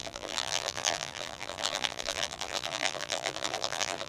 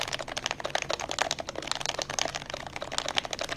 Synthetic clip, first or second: first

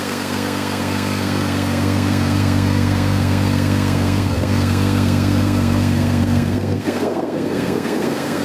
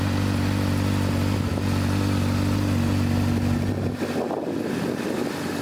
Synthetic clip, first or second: first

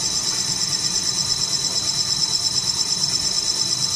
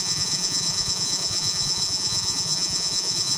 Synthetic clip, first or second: second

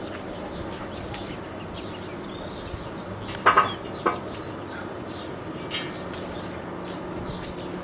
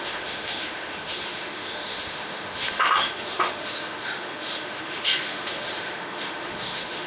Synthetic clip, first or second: second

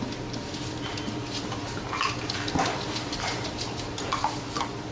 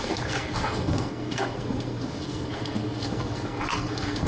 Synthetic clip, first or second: second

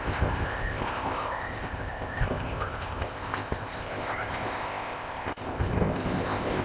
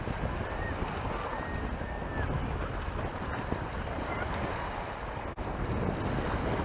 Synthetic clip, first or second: first